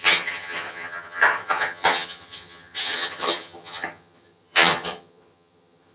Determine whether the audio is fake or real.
fake